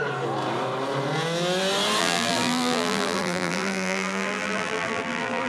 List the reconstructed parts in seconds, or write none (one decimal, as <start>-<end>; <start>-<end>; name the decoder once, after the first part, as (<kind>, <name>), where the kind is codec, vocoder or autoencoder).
2.0-5.5 (vocoder, BigVGAN v2)